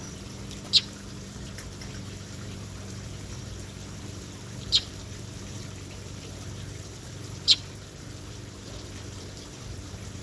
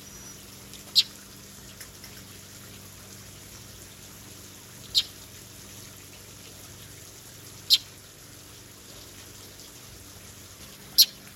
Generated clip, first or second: first